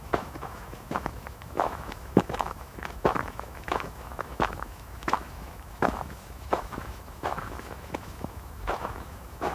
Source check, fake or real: fake